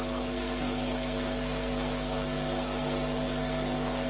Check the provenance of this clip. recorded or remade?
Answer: remade